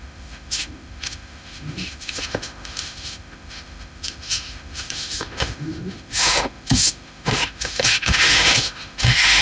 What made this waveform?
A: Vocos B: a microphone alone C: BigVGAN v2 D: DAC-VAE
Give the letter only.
D